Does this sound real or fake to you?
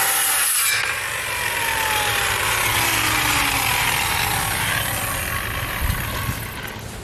real